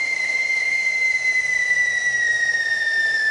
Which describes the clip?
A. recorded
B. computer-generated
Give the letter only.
A